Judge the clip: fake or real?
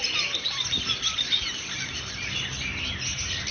real